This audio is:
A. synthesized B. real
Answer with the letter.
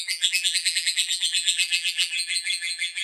A